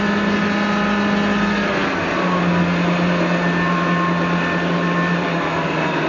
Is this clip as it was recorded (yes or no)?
yes